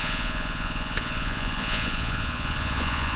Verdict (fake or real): fake